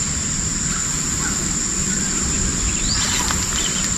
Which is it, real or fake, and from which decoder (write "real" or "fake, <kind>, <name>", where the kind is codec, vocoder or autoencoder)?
fake, vocoder, BigVGAN v2